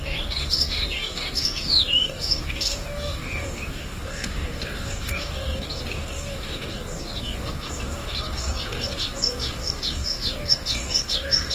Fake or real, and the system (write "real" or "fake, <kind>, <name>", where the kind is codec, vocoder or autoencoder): fake, codec, DAC